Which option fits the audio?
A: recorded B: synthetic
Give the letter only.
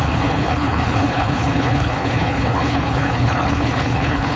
B